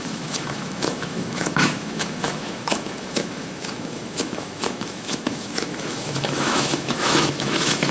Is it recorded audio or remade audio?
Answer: remade